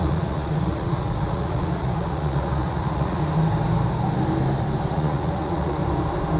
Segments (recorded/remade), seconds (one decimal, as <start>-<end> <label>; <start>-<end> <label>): 0.0-3.2 remade; 3.2-4.9 recorded; 4.9-5.8 remade; 5.8-6.4 recorded